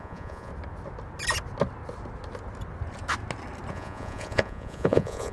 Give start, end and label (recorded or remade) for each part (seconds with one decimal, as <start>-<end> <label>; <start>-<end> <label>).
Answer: 0.0-0.5 remade; 0.5-3.7 recorded; 3.7-5.3 remade